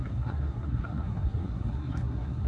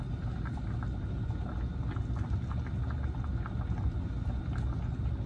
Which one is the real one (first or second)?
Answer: second